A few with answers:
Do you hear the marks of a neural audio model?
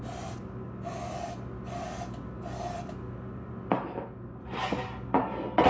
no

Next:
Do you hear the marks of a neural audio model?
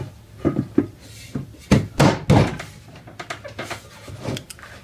no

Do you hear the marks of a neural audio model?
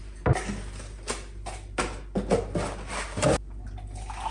no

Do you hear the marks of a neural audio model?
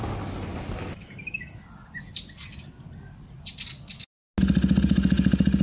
no